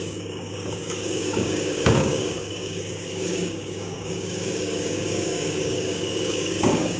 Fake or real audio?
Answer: fake